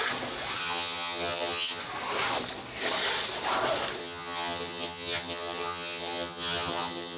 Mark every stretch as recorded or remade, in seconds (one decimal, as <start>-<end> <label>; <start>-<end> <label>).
0.0-0.6 recorded; 0.6-1.8 remade; 1.8-4.0 recorded; 4.0-7.2 remade

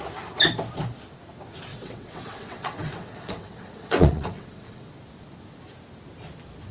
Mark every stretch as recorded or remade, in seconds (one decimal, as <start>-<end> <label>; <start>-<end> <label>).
0.0-1.7 recorded; 1.7-4.9 remade; 4.9-6.7 recorded

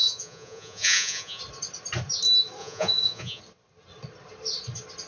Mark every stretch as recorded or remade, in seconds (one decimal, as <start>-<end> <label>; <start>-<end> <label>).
0.0-1.4 remade; 1.4-2.6 recorded; 2.6-3.4 remade; 3.4-5.1 recorded

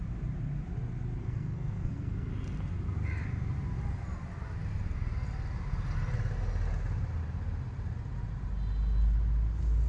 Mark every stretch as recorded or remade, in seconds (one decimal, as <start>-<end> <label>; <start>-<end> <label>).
0.0-1.2 recorded; 1.2-2.3 remade; 2.3-9.9 recorded

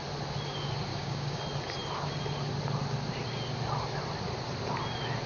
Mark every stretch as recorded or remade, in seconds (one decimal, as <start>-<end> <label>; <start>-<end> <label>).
0.0-0.9 recorded; 0.9-1.4 remade; 1.4-5.3 recorded

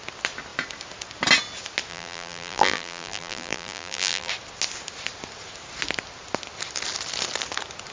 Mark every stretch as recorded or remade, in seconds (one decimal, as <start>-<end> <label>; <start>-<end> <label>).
0.0-1.9 recorded; 1.9-4.3 remade; 4.3-7.9 recorded

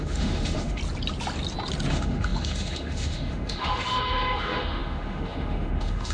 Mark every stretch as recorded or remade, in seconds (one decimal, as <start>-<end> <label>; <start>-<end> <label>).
0.0-0.8 remade; 0.8-1.9 recorded; 1.9-6.1 remade